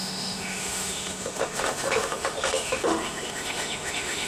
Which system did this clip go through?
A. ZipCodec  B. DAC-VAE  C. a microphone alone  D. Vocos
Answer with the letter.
B